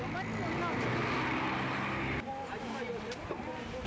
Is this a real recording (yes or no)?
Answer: yes